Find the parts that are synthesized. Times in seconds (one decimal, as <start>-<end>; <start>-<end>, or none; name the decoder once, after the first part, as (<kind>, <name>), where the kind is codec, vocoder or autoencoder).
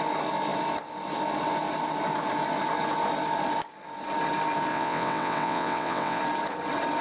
4.7-6.2 (vocoder, WaveNeXt)